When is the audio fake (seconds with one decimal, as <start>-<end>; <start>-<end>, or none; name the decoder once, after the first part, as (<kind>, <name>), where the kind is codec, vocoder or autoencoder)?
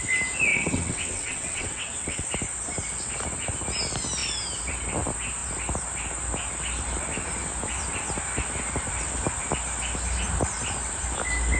0.5-2.3 (vocoder, WaveNeXt)